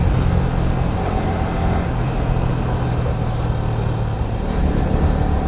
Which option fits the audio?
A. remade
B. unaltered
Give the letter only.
B